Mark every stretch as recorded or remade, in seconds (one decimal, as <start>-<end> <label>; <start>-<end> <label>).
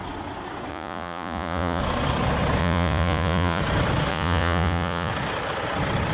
0.0-0.7 recorded; 0.7-1.8 remade; 1.8-2.6 recorded; 2.6-3.6 remade; 3.6-4.1 recorded; 4.1-5.1 remade; 5.1-6.1 recorded